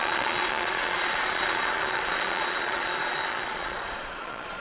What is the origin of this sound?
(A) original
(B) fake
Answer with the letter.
B